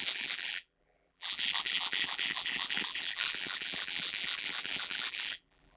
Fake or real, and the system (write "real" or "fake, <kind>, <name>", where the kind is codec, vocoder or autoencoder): fake, vocoder, BigVGAN v2